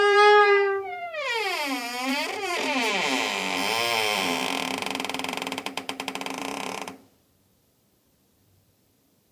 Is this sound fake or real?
fake